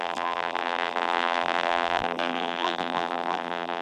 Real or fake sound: fake